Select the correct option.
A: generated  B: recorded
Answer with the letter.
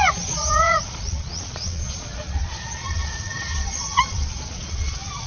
A